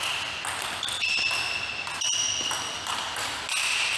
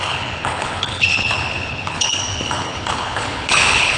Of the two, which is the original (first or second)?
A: first